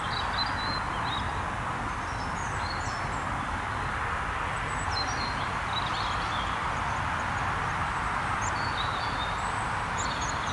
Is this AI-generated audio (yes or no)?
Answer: no